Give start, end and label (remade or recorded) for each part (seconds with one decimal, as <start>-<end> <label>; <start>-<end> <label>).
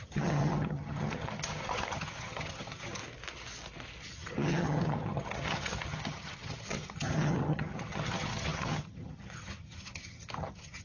0.0-3.0 remade; 3.0-4.0 recorded; 4.0-10.8 remade